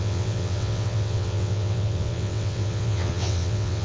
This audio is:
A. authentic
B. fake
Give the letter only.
B